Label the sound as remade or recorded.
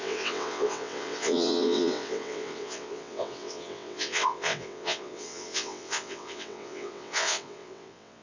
remade